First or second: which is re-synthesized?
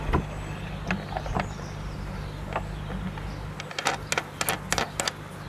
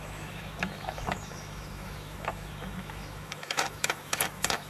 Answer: second